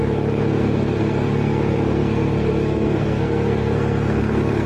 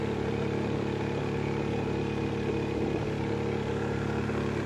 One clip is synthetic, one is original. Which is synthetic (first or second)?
first